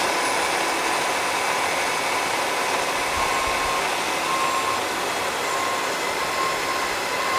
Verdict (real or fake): real